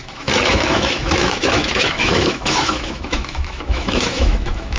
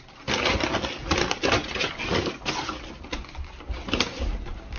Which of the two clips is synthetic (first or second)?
first